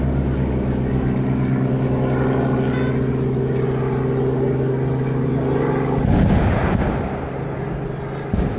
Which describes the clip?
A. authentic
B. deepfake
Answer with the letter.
A